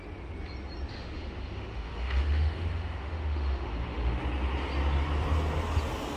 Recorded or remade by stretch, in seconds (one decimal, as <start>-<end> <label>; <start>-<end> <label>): 0.0-0.9 recorded; 0.9-4.2 remade; 4.2-6.2 recorded